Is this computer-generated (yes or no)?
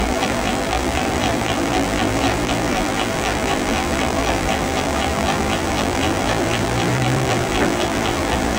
yes